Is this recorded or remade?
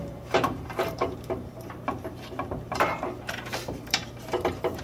remade